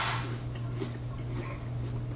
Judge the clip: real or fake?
real